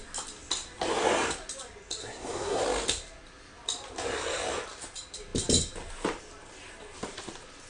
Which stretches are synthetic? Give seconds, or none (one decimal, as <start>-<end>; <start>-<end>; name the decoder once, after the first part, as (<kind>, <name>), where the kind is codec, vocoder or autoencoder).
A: 2.0-2.6 (codec, SNAC)